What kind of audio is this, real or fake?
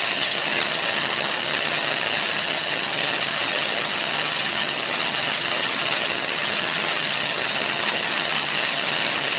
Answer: fake